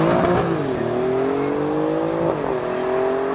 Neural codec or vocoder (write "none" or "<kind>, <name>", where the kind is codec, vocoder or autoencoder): none